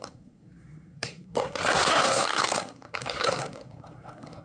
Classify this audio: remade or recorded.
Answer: remade